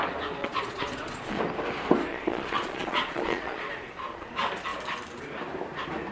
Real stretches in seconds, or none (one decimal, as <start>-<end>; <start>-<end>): 0.0-0.4; 1.4-2.1; 4.3-6.1